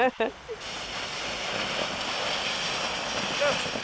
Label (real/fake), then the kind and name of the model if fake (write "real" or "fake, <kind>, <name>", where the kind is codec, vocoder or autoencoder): real